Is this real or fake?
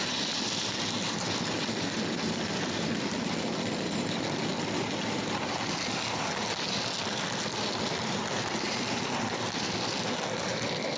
fake